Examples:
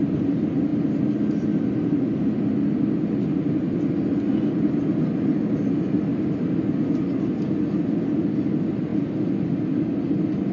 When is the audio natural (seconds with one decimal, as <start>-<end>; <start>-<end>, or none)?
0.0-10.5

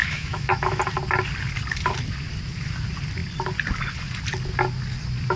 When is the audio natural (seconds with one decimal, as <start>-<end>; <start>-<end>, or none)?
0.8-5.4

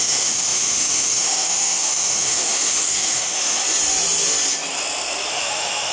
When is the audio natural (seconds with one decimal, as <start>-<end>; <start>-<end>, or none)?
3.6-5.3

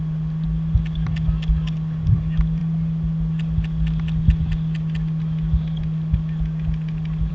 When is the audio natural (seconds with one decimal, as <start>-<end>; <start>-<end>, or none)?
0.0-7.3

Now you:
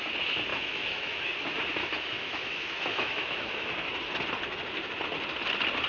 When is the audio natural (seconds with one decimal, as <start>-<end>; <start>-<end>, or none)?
0.0-0.5; 1.2-1.8; 3.7-5.9

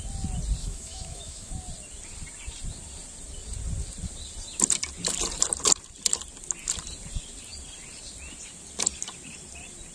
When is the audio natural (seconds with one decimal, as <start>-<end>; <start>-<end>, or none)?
0.0-0.6; 1.5-9.9

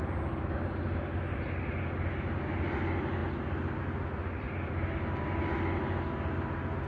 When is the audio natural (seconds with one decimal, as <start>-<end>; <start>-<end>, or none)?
0.0-6.9

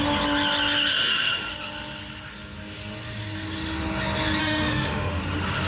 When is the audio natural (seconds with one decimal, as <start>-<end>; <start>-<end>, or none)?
0.0-0.9; 1.5-4.4; 5.2-5.7